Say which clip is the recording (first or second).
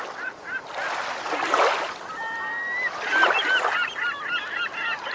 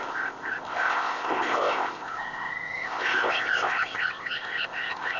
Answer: first